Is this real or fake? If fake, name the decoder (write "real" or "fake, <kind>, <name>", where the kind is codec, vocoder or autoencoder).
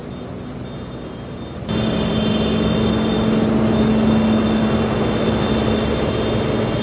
real